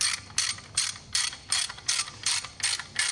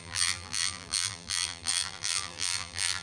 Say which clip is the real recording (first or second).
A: first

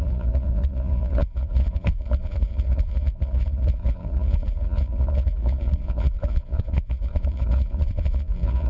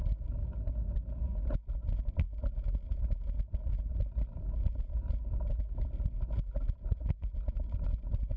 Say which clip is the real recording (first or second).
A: second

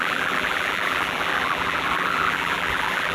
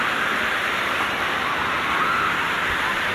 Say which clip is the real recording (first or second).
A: second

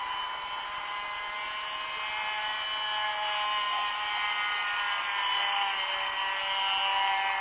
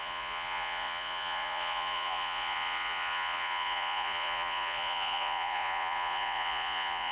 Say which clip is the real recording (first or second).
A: first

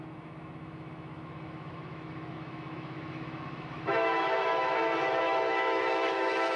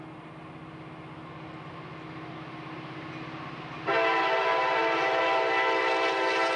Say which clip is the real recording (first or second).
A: second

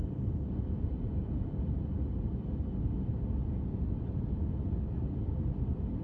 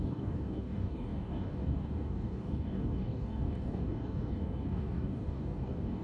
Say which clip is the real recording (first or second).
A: first